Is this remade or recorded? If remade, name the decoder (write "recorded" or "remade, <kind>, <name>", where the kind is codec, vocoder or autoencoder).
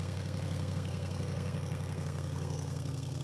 remade, codec, SNAC